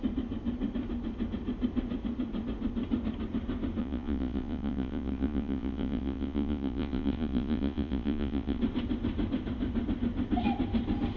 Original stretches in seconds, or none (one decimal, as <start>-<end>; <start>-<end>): 0.0-3.8; 8.6-11.2